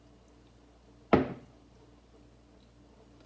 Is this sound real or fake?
real